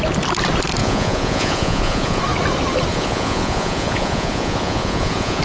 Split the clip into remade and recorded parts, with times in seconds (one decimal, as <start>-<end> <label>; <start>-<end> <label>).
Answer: 0.0-0.8 recorded; 0.8-2.2 remade; 2.2-2.9 recorded; 2.9-5.4 remade